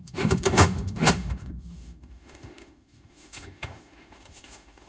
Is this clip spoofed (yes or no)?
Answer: yes